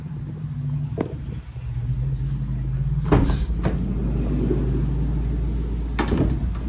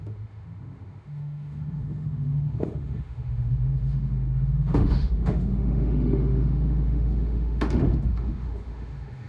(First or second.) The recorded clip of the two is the first